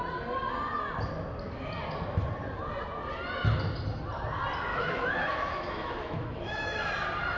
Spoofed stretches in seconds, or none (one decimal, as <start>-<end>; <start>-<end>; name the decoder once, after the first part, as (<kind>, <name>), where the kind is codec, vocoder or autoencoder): 4.7-6.9 (autoencoder, DAC-VAE)

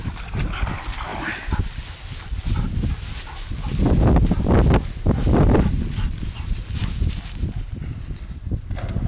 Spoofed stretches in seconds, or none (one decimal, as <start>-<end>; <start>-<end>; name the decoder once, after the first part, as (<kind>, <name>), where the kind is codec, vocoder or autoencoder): none

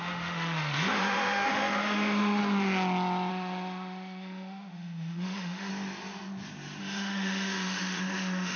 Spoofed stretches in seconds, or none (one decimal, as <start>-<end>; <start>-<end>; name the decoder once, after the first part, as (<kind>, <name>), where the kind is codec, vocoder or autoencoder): 0.0-2.4 (autoencoder, DAC-VAE); 3.3-5.7; 6.8-8.6

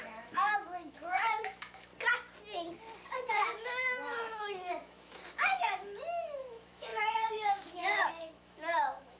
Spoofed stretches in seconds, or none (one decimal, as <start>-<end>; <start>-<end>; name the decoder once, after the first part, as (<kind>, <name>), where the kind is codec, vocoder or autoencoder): 0.0-1.9 (autoencoder, DAC-VAE); 3.3-9.2